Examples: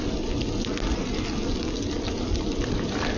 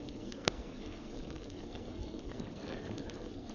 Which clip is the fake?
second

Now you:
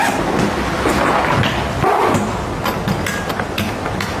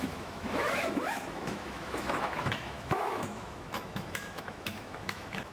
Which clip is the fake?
second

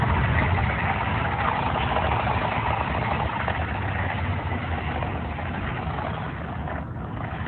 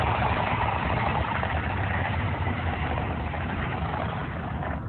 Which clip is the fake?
second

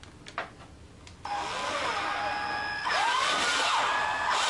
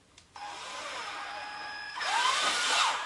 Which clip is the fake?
second